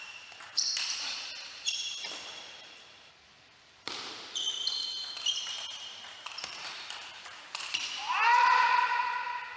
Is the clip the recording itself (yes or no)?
no